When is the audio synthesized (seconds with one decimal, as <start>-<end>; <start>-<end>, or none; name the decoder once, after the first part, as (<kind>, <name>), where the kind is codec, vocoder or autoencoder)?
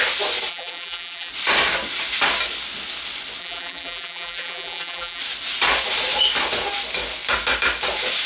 0.5-1.3 (vocoder, BigVGAN v2); 3.4-5.2